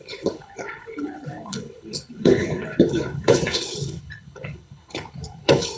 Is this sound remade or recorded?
remade